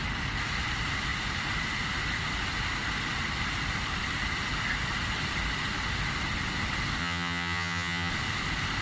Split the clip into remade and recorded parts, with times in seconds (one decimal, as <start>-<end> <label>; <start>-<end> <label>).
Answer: 0.0-7.0 recorded; 7.0-8.1 remade; 8.1-8.8 recorded